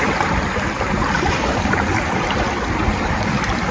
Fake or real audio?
fake